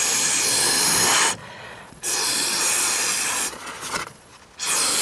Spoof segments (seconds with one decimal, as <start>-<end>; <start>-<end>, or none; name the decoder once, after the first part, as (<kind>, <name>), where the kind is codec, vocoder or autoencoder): 1.4-4.4 (vocoder, Vocos)